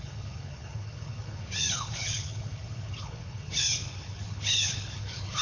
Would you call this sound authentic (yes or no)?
no